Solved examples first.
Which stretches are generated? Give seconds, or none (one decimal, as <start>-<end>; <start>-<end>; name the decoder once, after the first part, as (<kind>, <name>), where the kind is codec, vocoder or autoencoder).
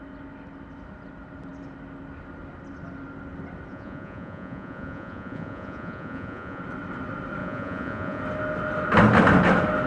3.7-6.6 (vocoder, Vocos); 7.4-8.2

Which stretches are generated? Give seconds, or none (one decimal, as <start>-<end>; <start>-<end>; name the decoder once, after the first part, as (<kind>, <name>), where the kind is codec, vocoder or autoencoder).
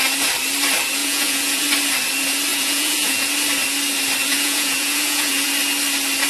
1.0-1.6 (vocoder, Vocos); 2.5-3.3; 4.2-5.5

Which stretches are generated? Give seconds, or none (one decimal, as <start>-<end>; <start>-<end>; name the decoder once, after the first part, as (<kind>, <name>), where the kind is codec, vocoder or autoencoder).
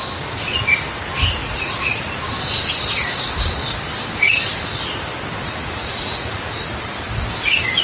1.4-2.1 (vocoder, Vocos); 5.4-6.4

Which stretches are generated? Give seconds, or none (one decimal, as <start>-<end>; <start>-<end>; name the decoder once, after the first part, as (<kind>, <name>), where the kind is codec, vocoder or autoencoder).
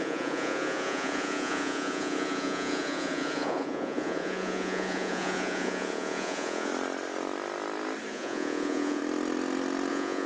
0.0-6.7 (vocoder, Vocos); 8.1-9.0; 9.9-10.3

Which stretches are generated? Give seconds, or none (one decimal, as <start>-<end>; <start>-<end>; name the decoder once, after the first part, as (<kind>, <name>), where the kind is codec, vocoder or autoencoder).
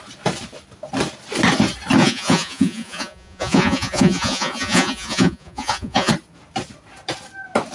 2.0-6.1 (vocoder, Vocos)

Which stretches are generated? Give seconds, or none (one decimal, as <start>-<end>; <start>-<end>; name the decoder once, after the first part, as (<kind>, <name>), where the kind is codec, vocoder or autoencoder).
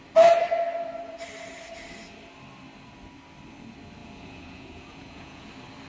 4.0-5.5 (vocoder, Vocos)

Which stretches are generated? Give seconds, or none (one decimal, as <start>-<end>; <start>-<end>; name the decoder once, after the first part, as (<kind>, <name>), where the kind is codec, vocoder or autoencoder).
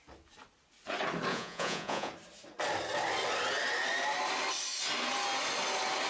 1.3-2.1 (vocoder, Vocos)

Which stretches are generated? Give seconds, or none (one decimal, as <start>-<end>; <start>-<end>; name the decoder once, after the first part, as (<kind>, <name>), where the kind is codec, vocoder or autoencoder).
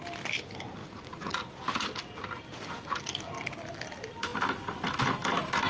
0.8-1.4 (vocoder, Vocos)